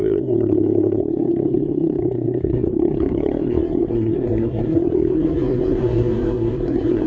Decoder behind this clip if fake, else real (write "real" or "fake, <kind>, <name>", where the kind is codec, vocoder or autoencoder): fake, codec, SNAC